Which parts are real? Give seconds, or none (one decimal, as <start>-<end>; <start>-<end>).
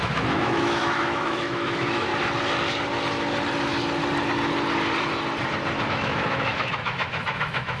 2.1-5.9